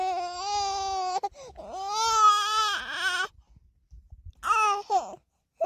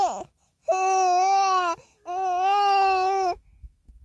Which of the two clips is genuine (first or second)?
first